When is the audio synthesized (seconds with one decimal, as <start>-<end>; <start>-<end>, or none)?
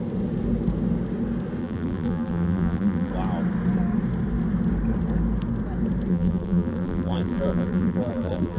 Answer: 1.6-3.1; 6.1-8.6